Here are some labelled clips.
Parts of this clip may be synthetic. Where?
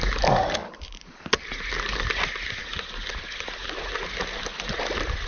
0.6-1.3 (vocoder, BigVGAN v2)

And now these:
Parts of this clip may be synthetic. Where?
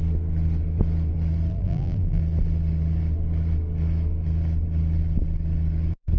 1.5-2.2 (vocoder, BigVGAN v2)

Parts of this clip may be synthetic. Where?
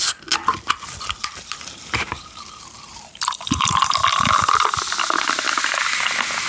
1.2-3.8 (vocoder, BigVGAN v2)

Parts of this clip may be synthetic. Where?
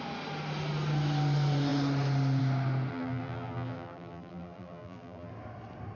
2.9-5.3 (vocoder, BigVGAN v2)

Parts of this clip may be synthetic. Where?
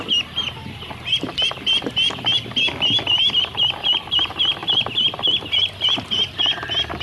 0.6-3.4 (vocoder, BigVGAN v2); 4.6-6.3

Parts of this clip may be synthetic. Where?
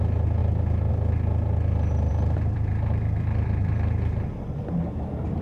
2.1-5.4 (vocoder, BigVGAN v2)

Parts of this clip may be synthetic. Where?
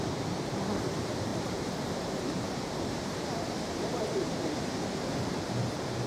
1.3-4.5 (vocoder, BigVGAN v2)